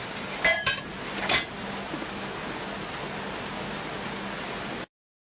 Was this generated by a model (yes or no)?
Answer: no